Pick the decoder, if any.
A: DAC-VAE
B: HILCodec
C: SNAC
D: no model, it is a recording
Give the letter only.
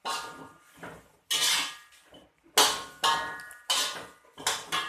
D